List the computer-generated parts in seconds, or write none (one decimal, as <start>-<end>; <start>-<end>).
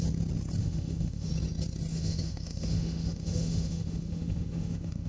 0.6-1.3; 1.9-5.1